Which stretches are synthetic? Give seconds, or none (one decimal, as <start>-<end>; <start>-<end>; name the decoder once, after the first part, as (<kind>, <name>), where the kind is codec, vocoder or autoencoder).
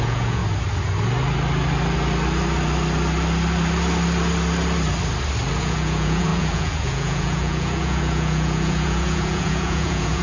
0.0-0.4 (vocoder, Vocos); 5.6-10.2